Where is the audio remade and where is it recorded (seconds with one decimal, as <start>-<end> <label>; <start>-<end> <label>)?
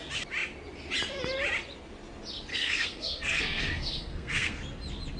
0.0-2.5 recorded; 2.5-4.6 remade; 4.6-5.2 recorded